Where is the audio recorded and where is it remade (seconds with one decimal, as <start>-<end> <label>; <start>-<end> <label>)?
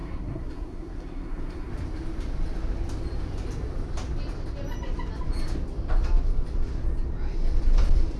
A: 0.0-1.7 remade; 1.7-8.2 recorded